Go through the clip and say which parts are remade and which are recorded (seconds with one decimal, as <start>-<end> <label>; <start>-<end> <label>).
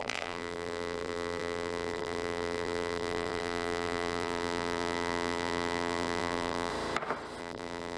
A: 0.0-6.7 remade; 6.7-7.4 recorded; 7.4-8.0 remade